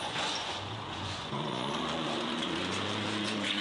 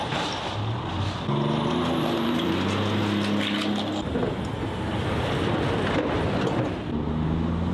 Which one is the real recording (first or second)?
second